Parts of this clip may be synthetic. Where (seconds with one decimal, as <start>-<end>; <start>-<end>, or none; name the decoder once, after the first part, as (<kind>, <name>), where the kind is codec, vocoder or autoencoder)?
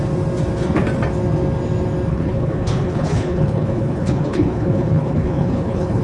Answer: 2.1-6.0 (codec, HILCodec)